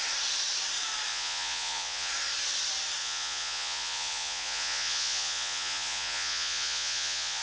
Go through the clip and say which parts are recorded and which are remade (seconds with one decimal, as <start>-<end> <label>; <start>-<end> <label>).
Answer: 0.0-1.1 recorded; 1.1-2.1 remade; 2.1-3.0 recorded; 3.0-7.4 remade